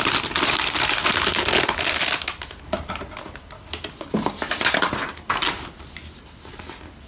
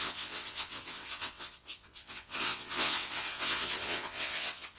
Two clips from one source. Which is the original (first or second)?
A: first